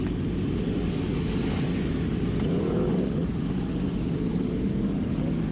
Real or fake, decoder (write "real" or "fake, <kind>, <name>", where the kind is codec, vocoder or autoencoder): real